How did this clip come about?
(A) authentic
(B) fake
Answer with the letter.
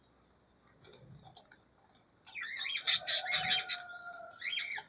A